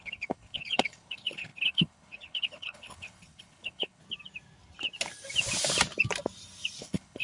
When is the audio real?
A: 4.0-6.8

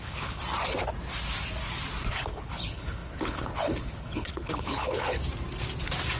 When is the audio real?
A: 0.4-2.3; 5.2-6.2

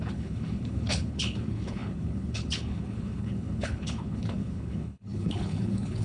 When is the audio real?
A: none

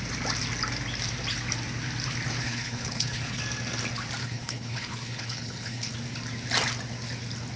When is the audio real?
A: 0.0-2.4; 3.4-4.2; 5.9-7.6